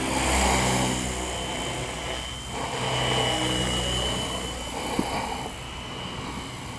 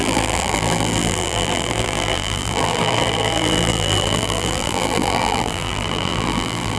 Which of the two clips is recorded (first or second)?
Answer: first